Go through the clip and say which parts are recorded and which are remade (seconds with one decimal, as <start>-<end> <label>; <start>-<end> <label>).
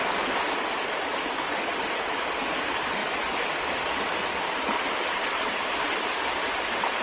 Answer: 0.0-3.0 recorded; 3.0-3.5 remade; 3.5-7.0 recorded